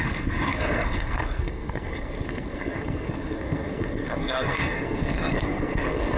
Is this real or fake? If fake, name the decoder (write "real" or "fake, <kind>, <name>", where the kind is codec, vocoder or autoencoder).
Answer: fake, codec, SNAC